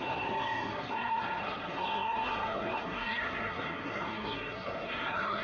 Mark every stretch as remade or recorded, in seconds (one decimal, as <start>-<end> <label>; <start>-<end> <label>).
0.0-5.4 remade